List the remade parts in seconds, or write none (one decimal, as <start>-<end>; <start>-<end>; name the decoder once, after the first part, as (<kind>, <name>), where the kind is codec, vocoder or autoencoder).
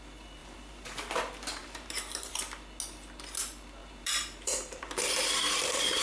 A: 0.4-1.2 (vocoder, BigVGAN v2); 1.6-2.3; 3.8-6.0